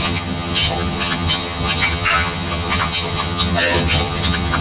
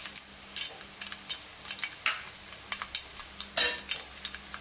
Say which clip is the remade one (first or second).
first